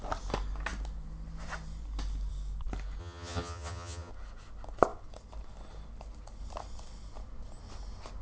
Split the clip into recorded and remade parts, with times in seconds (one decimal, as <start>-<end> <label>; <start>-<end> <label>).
0.0-3.0 recorded; 3.0-4.1 remade; 4.1-8.2 recorded